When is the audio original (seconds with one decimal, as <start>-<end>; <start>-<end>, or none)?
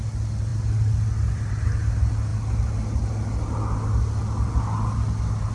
0.0-5.5